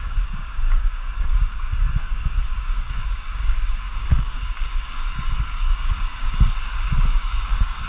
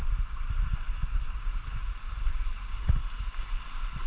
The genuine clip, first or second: second